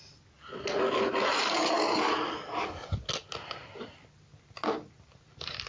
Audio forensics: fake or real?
real